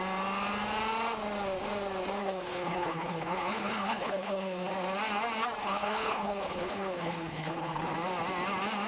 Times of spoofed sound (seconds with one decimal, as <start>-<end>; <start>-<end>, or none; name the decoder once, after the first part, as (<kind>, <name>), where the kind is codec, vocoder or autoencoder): 2.2-4.7 (codec, HILCodec); 5.6-7.9